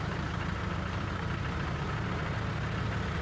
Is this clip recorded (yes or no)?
yes